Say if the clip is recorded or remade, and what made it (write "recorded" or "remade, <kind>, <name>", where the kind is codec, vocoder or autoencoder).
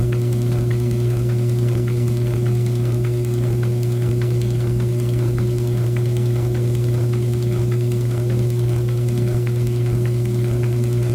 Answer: remade, codec, SNAC